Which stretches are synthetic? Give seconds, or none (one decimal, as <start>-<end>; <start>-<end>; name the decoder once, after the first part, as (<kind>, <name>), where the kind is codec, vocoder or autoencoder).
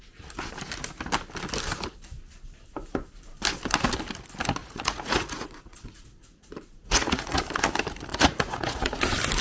4.6-7.4 (vocoder, Vocos); 8.1-9.0